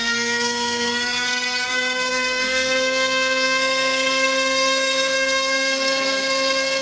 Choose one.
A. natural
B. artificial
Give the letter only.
B